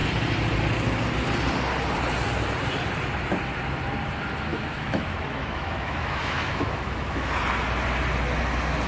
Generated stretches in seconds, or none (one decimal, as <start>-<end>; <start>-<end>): 4.5-7.4